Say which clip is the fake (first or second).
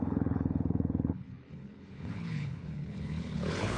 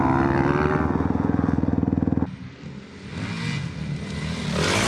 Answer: first